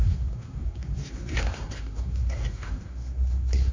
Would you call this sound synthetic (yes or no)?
yes